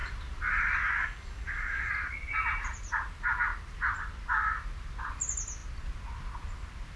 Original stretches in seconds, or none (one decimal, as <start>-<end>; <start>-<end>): 0.0-1.0; 1.9-7.0